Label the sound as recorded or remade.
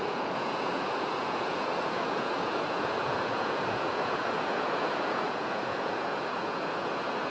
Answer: remade